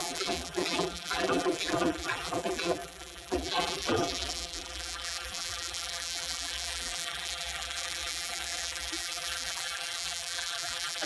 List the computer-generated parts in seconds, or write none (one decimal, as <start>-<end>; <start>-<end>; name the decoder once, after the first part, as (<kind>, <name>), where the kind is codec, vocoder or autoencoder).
0.0-11.1 (vocoder, BigVGAN v2)